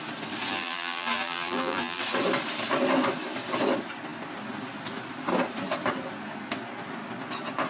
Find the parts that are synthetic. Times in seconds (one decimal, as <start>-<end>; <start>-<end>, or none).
0.5-2.0